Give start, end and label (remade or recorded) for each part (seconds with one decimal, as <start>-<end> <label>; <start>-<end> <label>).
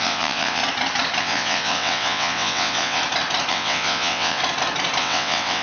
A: 0.0-0.6 remade; 0.6-1.2 recorded; 1.2-3.0 remade; 3.0-3.5 recorded; 3.5-4.4 remade; 4.4-5.0 recorded; 5.0-5.6 remade